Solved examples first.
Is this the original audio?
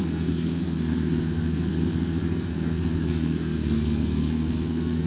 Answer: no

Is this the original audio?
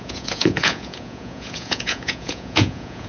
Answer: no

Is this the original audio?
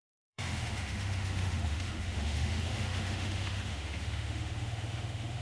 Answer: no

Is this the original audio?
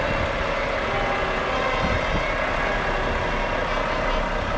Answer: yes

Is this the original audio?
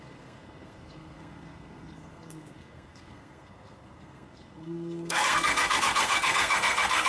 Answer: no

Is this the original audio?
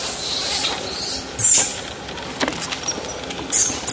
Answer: yes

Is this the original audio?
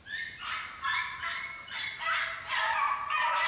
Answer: yes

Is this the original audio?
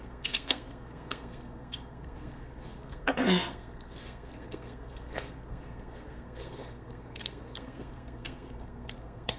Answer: no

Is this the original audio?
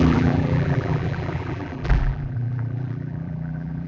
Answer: no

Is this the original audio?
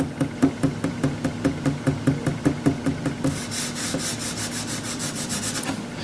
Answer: yes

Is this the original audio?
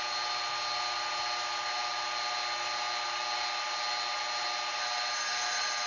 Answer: yes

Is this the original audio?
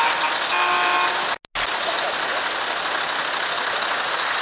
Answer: yes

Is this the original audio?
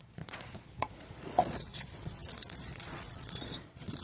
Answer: no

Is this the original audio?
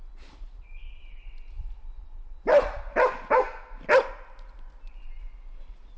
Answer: yes